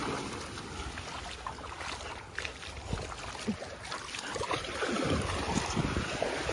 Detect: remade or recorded recorded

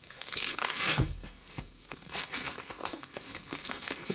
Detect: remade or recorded remade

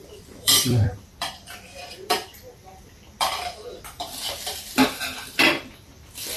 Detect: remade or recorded remade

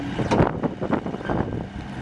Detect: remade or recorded recorded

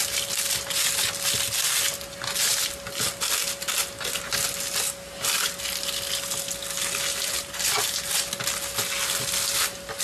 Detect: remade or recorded recorded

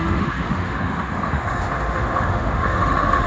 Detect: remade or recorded remade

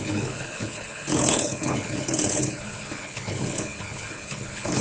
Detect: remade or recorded remade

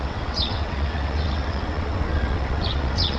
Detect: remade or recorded remade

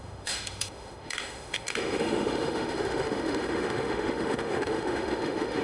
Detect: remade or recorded remade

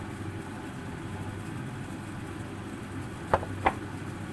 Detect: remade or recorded recorded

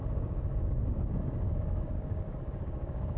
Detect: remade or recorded remade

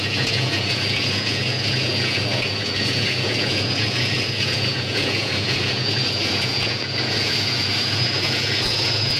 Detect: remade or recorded remade